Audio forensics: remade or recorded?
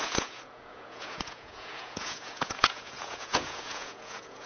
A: remade